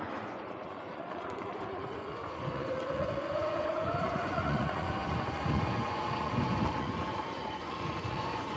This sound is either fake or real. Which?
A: fake